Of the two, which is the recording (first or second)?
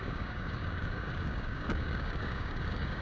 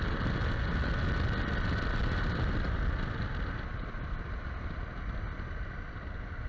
second